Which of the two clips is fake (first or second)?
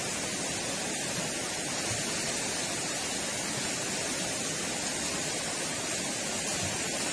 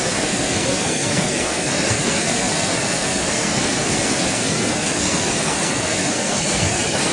second